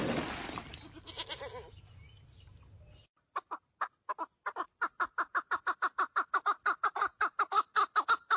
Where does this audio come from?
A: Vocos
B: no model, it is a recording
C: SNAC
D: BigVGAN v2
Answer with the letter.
B